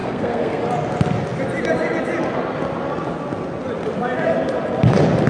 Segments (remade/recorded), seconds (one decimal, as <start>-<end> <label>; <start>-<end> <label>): 0.0-0.6 remade; 0.6-5.3 recorded